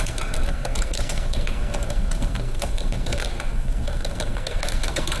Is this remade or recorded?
remade